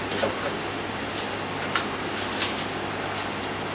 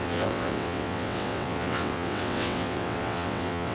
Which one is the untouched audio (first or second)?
first